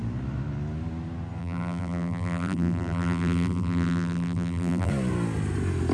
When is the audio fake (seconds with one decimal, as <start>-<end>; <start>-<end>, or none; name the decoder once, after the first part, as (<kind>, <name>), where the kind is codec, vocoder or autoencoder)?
1.4-4.9 (vocoder, BigVGAN v2)